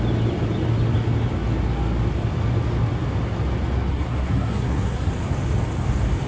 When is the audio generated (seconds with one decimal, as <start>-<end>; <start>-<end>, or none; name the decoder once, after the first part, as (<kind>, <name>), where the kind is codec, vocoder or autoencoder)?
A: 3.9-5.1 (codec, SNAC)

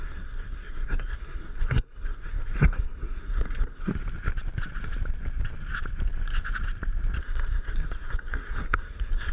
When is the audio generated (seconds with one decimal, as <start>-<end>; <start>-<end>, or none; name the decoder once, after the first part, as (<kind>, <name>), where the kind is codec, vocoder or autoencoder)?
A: 0.0-3.9 (codec, SNAC); 7.2-9.3

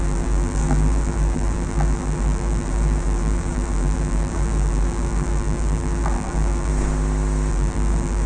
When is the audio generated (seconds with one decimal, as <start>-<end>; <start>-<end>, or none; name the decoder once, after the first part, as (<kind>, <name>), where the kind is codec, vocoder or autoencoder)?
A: 0.0-6.7 (vocoder, BigVGAN v2); 7.5-8.3

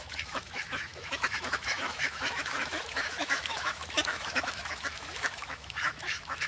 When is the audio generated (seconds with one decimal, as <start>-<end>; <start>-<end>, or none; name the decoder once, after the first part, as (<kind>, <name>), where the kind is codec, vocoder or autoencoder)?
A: 0.0-6.5 (autoencoder, DAC-VAE)

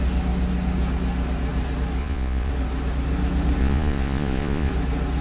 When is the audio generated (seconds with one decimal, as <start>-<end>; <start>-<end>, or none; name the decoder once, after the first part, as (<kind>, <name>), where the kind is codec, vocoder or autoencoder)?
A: 2.0-2.5 (vocoder, Vocos); 3.6-4.7